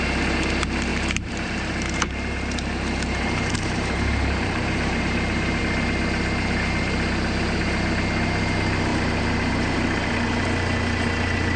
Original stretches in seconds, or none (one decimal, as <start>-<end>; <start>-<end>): 0.0-0.9; 5.6-8.9; 10.1-11.6